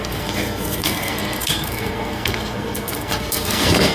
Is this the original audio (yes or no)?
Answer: no